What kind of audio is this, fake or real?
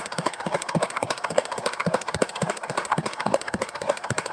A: fake